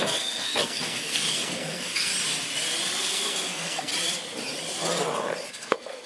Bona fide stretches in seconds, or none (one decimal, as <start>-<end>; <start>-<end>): 2.1-3.0; 3.9-5.5